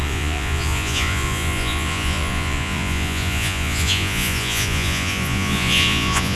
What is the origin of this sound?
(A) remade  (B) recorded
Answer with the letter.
A